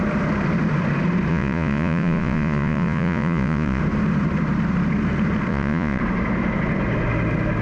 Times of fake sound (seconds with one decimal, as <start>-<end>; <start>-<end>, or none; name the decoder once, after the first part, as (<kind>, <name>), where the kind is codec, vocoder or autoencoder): 1.3-3.8 (vocoder, Vocos); 5.5-6.0